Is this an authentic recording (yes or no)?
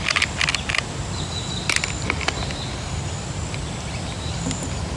yes